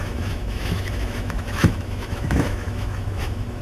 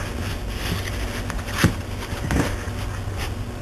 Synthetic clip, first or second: first